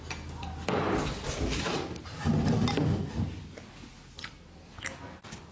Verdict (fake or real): real